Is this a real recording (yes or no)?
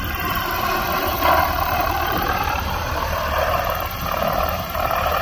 no